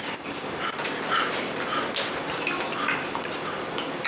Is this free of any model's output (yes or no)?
yes